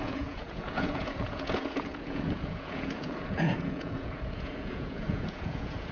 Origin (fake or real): fake